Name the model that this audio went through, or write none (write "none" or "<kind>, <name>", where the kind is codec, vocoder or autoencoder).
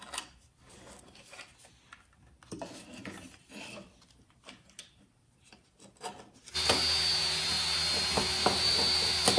none